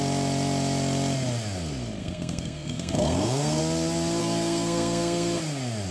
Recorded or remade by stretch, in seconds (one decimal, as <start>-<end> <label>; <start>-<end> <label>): 0.0-2.0 recorded; 2.0-3.6 remade; 3.6-4.2 recorded; 4.2-5.4 remade; 5.4-5.9 recorded